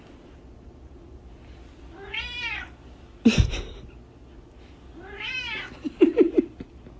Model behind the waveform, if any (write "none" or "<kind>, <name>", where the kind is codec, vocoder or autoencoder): none